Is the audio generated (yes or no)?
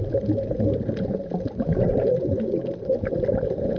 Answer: no